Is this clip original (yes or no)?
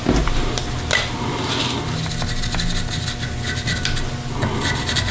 yes